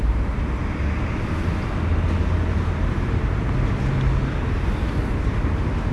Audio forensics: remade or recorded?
recorded